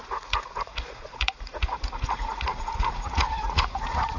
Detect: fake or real fake